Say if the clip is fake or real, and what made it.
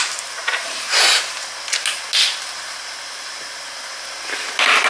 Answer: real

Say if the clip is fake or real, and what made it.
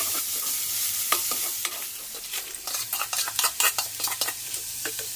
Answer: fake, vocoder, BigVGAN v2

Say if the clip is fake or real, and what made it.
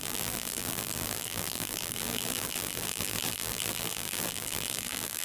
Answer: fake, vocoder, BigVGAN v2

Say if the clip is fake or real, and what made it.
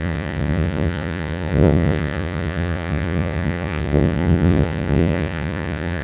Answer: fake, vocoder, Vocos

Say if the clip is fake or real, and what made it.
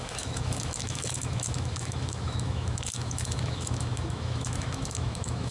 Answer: fake, autoencoder, DAC-VAE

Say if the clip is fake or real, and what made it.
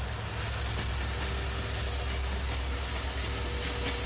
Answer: real